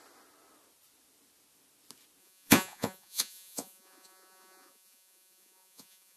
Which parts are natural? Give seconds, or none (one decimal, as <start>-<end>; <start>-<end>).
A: 0.0-2.2